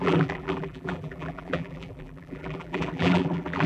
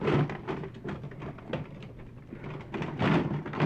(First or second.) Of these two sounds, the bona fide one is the second